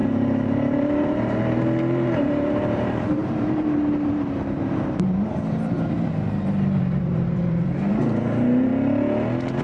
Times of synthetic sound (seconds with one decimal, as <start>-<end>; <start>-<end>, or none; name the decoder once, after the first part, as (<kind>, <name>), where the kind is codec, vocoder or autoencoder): 0.0-8.7 (vocoder, BigVGAN v2)